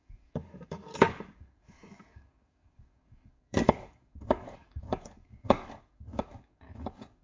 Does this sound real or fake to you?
fake